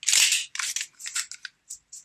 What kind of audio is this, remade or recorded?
recorded